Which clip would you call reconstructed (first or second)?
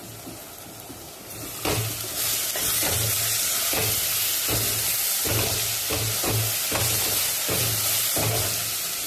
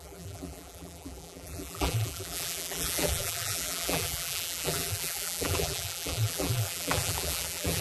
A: second